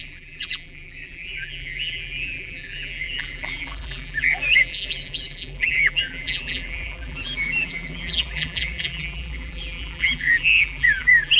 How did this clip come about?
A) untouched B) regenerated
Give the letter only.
B